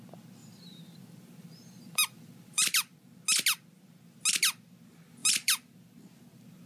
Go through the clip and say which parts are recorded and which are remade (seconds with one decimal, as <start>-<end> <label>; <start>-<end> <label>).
0.0-0.4 recorded; 0.4-3.2 remade; 3.2-5.2 recorded; 5.2-5.7 remade; 5.7-6.7 recorded